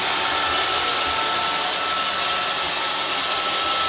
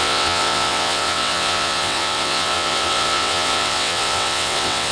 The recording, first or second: first